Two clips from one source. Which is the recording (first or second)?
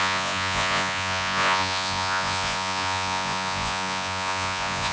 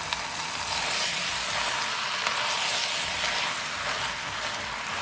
second